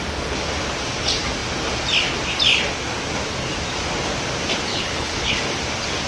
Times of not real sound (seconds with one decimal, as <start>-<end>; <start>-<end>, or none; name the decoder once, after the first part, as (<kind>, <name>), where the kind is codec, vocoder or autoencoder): 4.7-5.4 (codec, HILCodec)